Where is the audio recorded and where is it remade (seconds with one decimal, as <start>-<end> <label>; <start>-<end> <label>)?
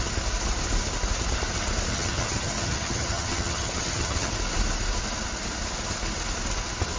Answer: 0.0-1.9 recorded; 1.9-4.3 remade; 4.3-7.0 recorded